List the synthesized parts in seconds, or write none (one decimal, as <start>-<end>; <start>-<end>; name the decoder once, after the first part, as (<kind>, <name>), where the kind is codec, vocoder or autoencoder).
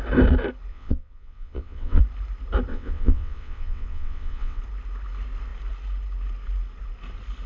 0.7-2.0 (vocoder, WaveNeXt); 2.7-4.6